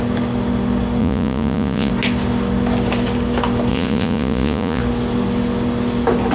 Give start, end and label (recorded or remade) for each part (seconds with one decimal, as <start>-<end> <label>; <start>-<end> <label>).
0.0-1.0 recorded; 1.0-1.9 remade; 1.9-3.7 recorded; 3.7-4.8 remade; 4.8-6.3 recorded